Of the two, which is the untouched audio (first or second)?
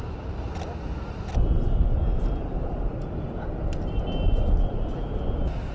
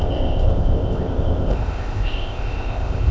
first